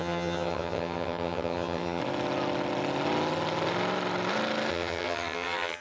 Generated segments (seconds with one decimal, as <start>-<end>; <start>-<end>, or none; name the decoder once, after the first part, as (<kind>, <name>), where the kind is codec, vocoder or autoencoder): 0.0-2.0 (vocoder, HiFi-GAN); 4.7-5.8